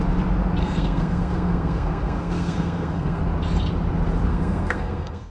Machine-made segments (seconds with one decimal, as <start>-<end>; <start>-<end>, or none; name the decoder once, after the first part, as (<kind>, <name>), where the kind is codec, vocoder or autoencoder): 0.6-3.2 (codec, SNAC); 4.3-5.3